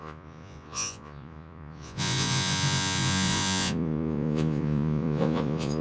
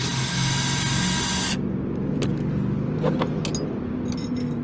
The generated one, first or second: first